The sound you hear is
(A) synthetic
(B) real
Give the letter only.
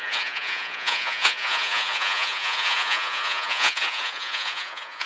A